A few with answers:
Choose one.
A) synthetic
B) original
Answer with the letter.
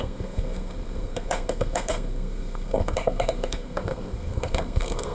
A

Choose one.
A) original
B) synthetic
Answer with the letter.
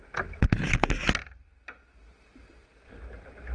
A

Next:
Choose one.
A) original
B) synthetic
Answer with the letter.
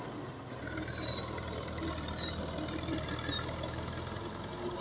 A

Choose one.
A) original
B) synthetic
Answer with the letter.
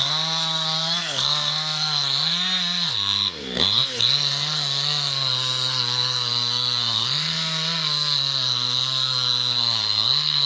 B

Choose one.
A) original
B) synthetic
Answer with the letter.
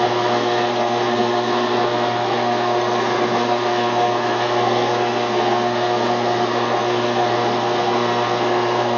B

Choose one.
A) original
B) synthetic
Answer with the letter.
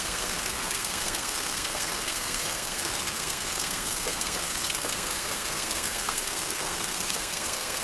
B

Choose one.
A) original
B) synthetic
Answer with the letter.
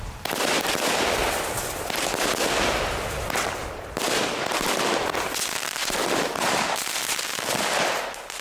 A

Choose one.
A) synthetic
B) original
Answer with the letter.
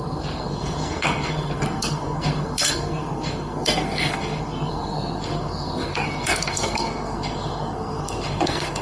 A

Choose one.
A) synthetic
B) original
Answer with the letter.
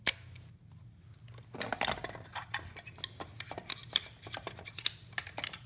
B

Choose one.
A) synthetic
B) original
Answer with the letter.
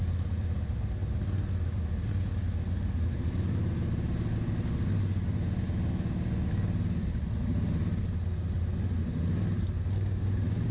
B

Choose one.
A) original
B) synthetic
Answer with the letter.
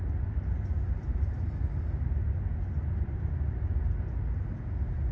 A